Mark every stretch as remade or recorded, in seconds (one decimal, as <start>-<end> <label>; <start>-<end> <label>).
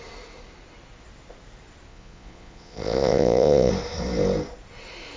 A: 0.0-1.9 recorded; 1.9-3.7 remade; 3.7-5.2 recorded